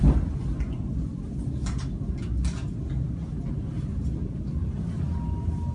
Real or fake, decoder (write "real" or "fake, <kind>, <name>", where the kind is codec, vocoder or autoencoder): real